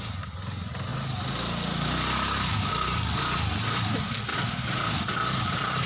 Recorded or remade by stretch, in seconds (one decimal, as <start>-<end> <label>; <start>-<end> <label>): 0.0-4.3 recorded; 4.3-5.9 remade